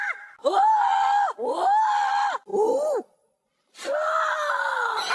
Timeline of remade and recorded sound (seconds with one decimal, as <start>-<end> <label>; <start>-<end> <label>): 0.0-5.1 recorded